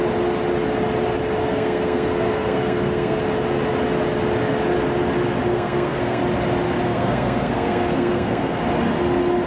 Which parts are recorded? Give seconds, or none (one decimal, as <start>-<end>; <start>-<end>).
0.0-1.4; 3.2-5.5; 6.2-6.9; 8.6-9.5